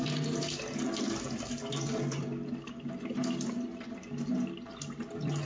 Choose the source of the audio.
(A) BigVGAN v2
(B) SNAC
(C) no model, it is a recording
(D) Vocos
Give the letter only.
C